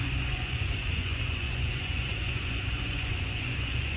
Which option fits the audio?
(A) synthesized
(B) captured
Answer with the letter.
A